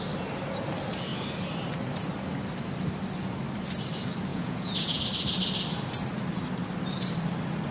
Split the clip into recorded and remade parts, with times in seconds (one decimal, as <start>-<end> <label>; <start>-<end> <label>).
0.0-4.3 recorded; 4.3-5.0 remade; 5.0-7.7 recorded